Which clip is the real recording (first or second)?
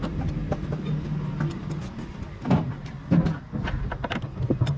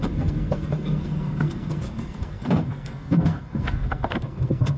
first